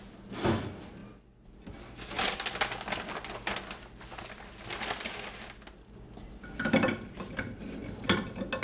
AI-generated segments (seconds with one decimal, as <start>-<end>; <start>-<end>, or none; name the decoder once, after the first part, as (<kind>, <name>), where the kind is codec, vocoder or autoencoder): none